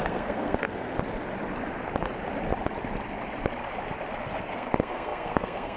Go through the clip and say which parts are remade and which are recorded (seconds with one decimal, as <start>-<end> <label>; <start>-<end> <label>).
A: 0.0-0.9 remade; 0.9-4.4 recorded; 4.4-5.8 remade